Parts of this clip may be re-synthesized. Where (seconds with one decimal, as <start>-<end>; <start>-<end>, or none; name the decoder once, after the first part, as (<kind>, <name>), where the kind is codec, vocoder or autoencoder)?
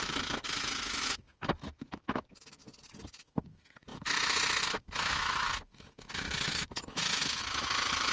0.0-2.6 (autoencoder, DAC-VAE); 3.1-8.1